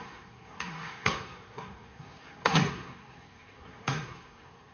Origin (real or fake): fake